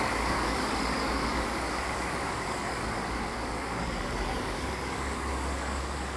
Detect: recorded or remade remade